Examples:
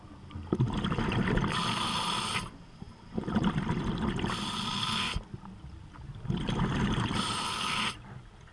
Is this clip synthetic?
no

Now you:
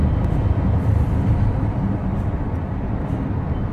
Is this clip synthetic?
no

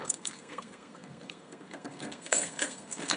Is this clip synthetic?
yes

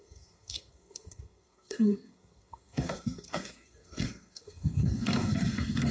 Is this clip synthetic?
yes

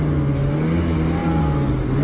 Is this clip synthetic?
no